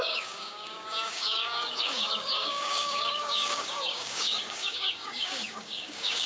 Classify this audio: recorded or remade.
remade